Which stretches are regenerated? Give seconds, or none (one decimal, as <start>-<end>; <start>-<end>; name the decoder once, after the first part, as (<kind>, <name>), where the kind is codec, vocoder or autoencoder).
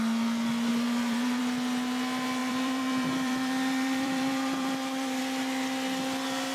0.7-1.4 (vocoder, BigVGAN v2); 2.4-5.2